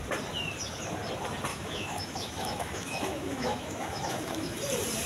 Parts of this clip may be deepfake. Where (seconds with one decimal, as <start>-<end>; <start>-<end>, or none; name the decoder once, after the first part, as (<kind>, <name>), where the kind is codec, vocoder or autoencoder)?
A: 1.5-4.6 (autoencoder, DAC-VAE)